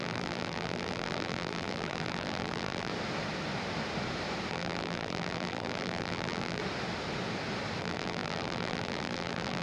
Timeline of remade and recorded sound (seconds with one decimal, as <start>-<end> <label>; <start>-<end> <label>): 0.0-2.9 remade; 2.9-4.5 recorded; 4.5-6.6 remade; 6.6-7.8 recorded; 7.8-9.6 remade